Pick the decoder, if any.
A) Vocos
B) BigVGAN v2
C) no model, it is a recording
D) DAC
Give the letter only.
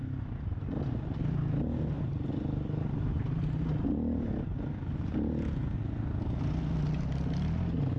C